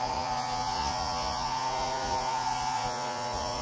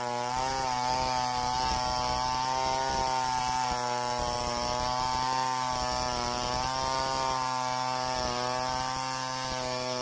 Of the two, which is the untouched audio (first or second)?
second